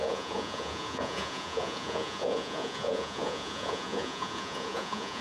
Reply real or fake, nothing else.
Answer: fake